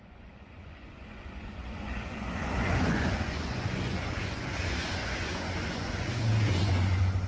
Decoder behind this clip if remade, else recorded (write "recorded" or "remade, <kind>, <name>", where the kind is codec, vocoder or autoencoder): remade, vocoder, Vocos